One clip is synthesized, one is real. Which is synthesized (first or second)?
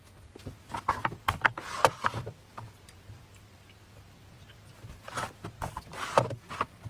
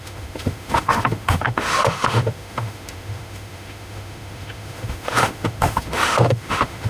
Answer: second